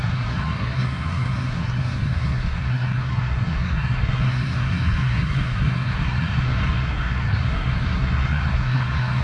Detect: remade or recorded remade